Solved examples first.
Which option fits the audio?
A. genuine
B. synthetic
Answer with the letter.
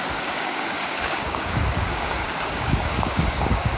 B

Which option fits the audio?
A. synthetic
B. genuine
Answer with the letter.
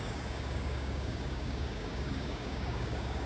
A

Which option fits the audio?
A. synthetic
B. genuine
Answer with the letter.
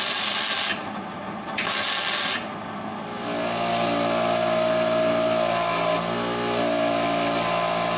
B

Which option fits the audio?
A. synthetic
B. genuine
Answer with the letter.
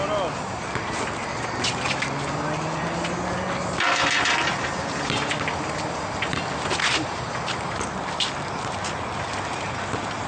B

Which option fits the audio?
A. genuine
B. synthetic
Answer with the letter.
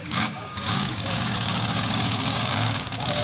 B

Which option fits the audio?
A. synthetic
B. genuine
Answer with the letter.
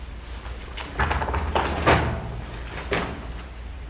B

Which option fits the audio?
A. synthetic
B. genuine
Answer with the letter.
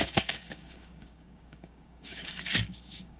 A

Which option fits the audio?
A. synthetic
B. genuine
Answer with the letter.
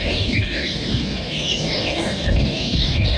A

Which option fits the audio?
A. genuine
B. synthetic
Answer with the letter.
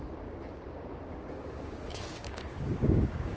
B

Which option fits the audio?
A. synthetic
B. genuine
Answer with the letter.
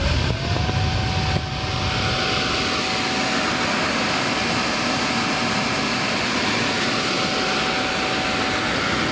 B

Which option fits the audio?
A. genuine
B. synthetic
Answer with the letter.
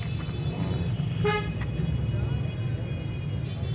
A